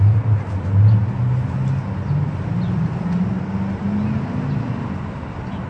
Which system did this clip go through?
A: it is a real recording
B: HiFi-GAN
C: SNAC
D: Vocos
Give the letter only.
A